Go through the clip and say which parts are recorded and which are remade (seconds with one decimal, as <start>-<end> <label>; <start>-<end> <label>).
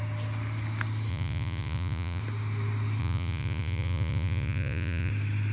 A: 0.0-1.1 recorded; 1.1-2.2 remade; 2.2-3.0 recorded; 3.0-5.1 remade; 5.1-5.5 recorded